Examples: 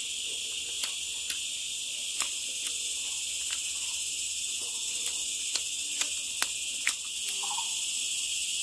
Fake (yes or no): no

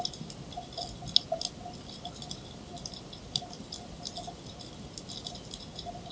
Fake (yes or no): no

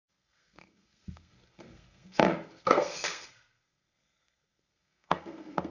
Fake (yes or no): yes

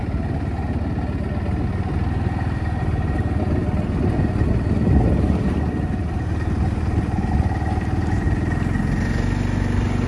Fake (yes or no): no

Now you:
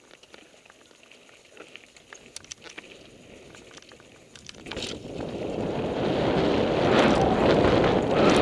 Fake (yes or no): no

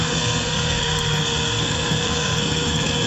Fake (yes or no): yes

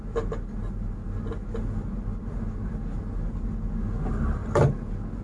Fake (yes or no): no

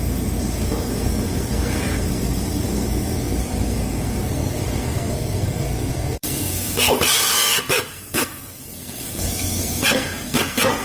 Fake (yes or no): yes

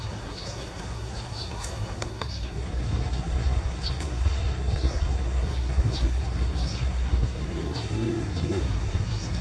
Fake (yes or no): yes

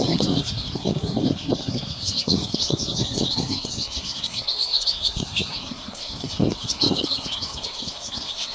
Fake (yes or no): yes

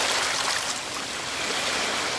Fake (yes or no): no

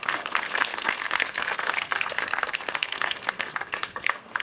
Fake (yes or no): yes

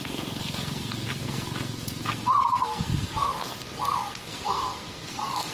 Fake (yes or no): yes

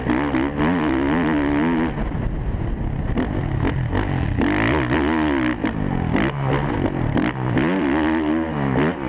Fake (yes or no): no